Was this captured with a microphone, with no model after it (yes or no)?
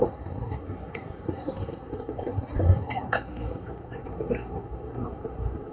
no